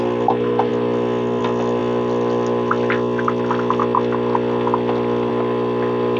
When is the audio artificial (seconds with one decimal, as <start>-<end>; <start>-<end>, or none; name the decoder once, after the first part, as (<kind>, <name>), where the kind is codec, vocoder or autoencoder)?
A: none